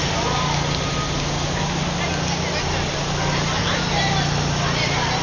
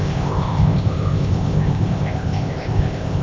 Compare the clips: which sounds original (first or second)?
first